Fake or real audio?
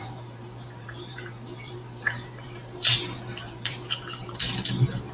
fake